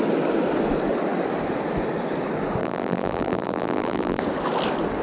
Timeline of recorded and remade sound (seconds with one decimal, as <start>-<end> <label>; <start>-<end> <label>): 0.0-2.6 recorded; 2.6-4.2 remade; 4.2-5.0 recorded